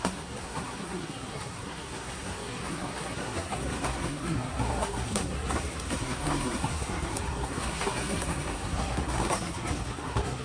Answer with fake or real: fake